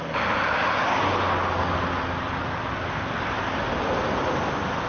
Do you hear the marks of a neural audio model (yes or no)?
no